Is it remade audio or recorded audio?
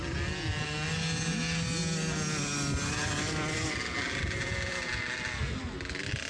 recorded